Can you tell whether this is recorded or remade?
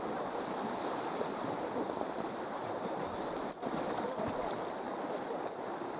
recorded